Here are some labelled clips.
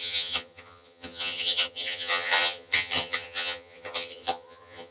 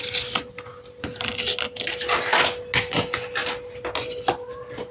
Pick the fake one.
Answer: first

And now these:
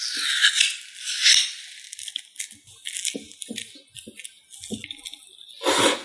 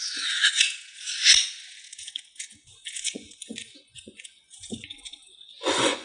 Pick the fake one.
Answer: second